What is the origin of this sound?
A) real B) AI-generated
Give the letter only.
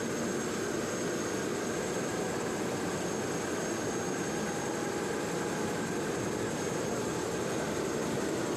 A